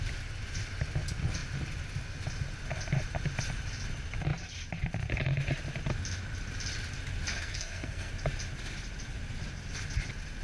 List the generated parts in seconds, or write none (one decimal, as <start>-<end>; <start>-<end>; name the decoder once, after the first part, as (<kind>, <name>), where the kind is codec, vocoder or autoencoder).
7.3-8.1 (codec, SNAC)